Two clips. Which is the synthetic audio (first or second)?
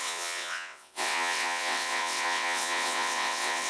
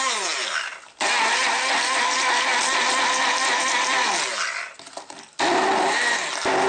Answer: first